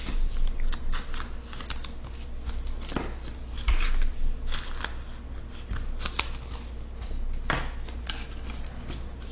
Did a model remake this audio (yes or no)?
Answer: no